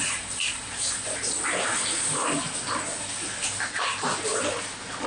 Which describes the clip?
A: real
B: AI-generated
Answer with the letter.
A